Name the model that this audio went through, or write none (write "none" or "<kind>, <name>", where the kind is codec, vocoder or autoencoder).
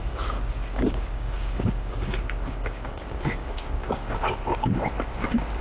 codec, DAC